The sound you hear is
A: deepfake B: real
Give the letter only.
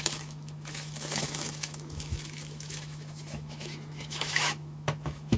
A